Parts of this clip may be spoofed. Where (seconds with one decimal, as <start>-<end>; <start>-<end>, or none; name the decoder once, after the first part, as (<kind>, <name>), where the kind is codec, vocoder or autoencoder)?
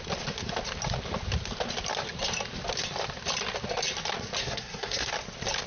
4.4-5.1 (codec, SNAC)